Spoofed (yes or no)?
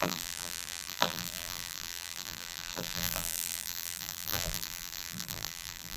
yes